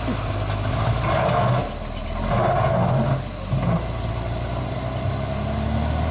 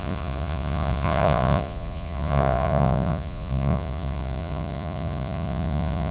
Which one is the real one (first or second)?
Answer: first